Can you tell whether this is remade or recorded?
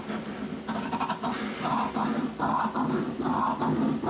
recorded